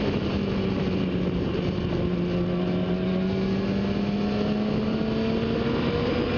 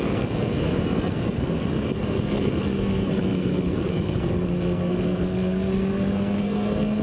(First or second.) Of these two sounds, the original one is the first